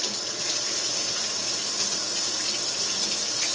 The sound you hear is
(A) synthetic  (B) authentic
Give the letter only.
B